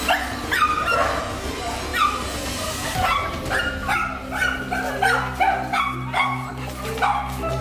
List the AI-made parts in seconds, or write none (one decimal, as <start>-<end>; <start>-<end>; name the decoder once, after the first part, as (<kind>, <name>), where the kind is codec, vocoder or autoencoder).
none